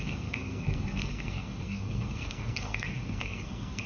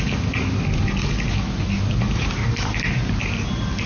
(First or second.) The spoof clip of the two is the first